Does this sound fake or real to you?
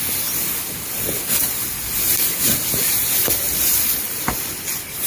real